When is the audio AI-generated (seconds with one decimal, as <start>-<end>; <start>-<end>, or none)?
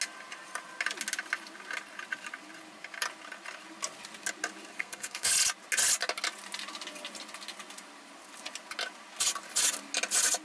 4.8-5.3